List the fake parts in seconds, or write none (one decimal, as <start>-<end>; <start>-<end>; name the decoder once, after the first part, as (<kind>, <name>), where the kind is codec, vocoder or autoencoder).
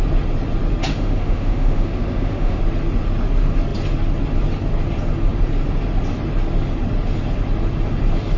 0.9-2.6 (autoencoder, DAC-VAE)